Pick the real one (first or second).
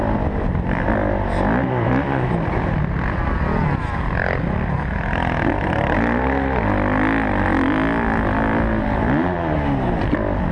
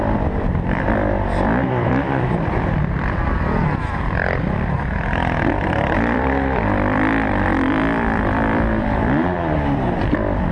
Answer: first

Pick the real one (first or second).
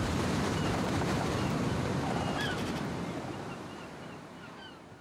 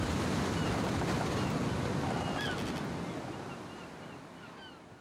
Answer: second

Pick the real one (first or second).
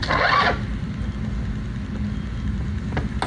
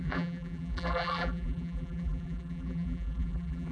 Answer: first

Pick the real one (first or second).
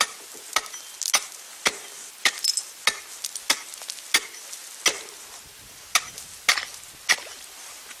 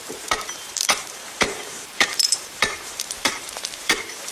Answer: first